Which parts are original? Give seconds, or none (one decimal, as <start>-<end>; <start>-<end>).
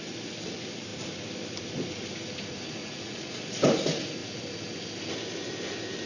0.0-2.8; 3.4-6.1